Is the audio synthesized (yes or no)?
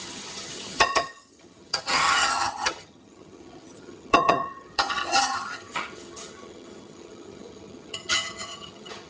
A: yes